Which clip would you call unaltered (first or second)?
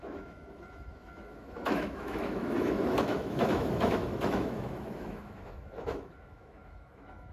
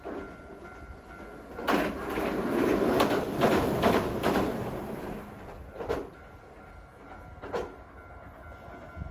second